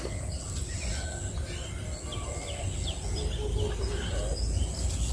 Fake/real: real